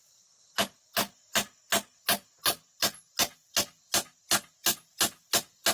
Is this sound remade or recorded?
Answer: recorded